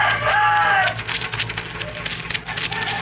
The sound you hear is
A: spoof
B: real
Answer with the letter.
B